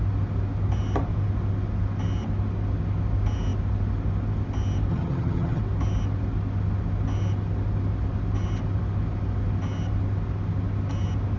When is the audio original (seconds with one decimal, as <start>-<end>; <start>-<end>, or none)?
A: 0.0-4.9; 5.6-11.4